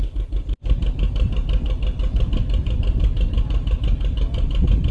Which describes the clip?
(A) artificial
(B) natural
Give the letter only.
B